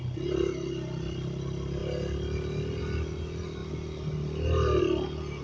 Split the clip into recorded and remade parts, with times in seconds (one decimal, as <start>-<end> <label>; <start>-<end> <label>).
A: 0.0-5.4 recorded